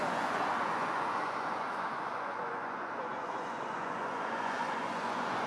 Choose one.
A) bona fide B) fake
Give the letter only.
B